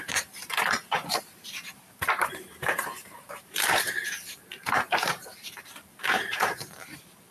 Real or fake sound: fake